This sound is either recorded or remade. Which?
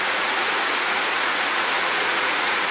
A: remade